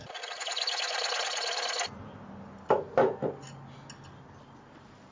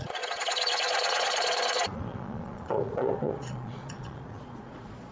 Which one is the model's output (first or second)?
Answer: second